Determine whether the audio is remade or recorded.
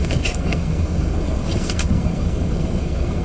remade